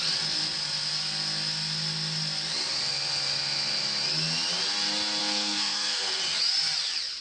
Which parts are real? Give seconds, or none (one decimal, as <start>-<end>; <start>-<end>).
0.0-5.2; 6.2-7.2